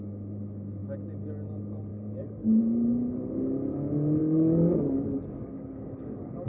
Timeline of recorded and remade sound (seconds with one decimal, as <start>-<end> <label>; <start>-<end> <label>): 0.0-1.9 recorded; 1.9-2.6 remade; 2.6-4.2 recorded; 4.2-6.5 remade